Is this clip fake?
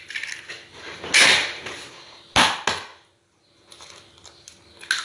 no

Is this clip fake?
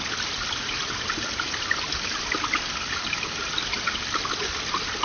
no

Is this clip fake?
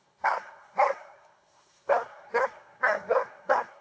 yes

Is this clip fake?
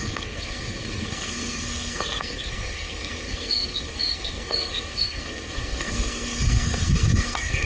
yes